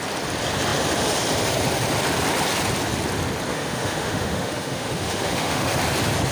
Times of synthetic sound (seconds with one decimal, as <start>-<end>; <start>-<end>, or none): 3.5-5.8